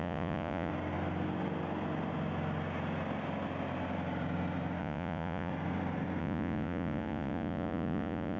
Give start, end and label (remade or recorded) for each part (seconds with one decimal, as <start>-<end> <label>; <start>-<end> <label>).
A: 0.0-0.7 remade; 0.7-4.8 recorded; 4.8-5.5 remade; 5.5-6.2 recorded; 6.2-8.4 remade

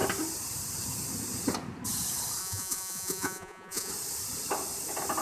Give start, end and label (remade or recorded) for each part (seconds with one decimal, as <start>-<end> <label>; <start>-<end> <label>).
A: 0.0-2.4 recorded; 2.4-3.9 remade; 3.9-5.2 recorded

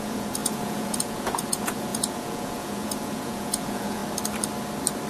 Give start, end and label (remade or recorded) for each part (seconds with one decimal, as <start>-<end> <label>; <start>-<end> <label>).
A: 0.0-4.0 remade; 4.0-5.1 recorded

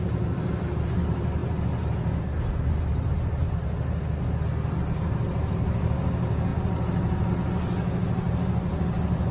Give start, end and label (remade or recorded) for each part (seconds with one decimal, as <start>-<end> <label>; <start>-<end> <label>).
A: 0.0-9.3 recorded

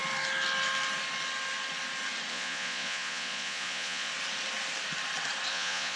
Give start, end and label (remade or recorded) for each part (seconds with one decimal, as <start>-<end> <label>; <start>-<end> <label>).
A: 0.0-2.3 recorded; 2.3-4.1 remade; 4.1-5.5 recorded; 5.5-6.0 remade